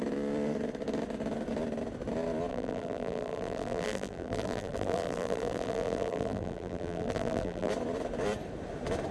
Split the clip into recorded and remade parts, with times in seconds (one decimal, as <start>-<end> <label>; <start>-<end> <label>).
0.0-2.5 recorded; 2.5-7.7 remade; 7.7-9.1 recorded